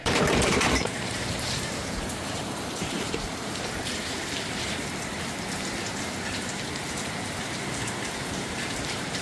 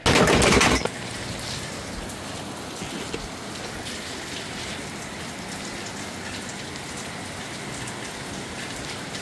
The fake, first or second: first